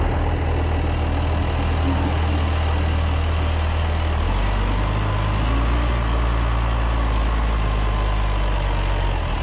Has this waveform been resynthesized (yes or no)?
no